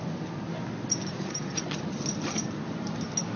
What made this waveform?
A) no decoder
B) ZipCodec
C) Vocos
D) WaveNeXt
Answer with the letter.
A